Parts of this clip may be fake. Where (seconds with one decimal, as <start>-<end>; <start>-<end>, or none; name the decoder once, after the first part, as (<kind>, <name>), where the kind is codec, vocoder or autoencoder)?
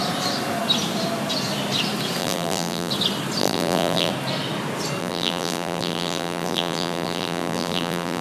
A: 2.2-2.9 (vocoder, BigVGAN v2); 3.4-4.1; 5.0-8.2